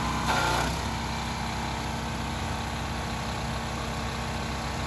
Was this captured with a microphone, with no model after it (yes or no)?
yes